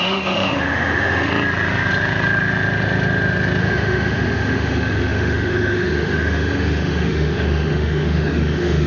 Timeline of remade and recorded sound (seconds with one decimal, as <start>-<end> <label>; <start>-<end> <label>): 0.0-1.3 remade; 1.3-3.6 recorded; 3.6-8.9 remade